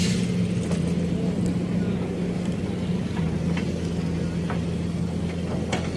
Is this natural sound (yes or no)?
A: yes